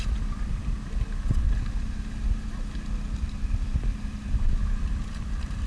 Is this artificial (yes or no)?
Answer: yes